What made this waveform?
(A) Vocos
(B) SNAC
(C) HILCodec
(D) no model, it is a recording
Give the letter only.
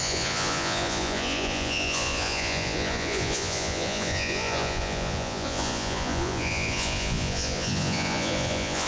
A